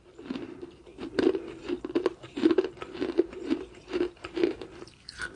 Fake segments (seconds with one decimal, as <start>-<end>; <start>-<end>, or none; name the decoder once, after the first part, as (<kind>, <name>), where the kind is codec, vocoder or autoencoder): none